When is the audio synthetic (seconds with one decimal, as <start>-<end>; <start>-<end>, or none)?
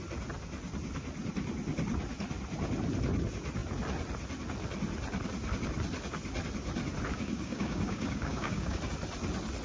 7.1-8.8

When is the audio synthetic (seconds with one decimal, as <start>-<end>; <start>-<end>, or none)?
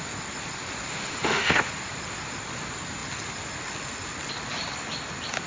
0.9-1.7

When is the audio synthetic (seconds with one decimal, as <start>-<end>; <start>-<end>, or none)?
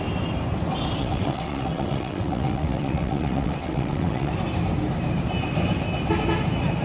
1.0-4.3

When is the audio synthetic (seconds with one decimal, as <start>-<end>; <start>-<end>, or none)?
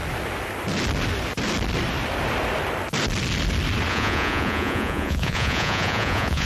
3.9-6.5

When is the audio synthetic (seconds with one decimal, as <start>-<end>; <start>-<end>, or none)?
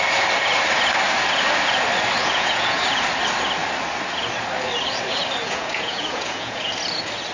2.2-2.8; 5.4-6.7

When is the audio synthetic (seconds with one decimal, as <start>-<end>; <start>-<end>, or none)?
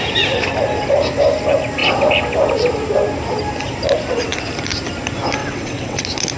5.4-6.0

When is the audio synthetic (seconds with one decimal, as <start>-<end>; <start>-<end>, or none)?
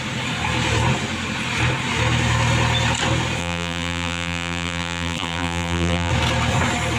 3.4-6.1